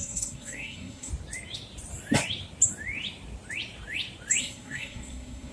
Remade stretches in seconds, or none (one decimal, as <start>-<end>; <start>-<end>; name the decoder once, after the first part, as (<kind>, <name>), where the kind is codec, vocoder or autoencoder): 0.0-1.1 (codec, SNAC); 4.4-5.5